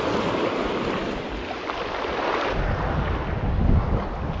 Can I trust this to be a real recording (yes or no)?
yes